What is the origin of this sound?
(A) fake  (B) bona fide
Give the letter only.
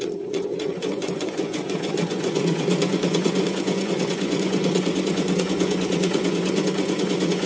A